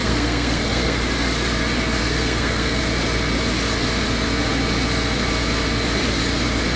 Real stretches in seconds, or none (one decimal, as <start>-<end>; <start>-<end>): 1.0-2.0; 2.8-6.8